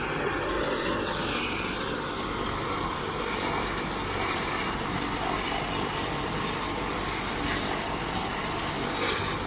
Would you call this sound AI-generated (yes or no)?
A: no